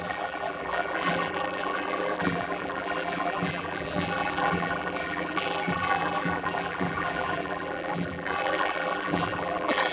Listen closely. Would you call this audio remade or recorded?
remade